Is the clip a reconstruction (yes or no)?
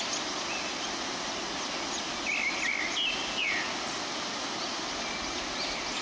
no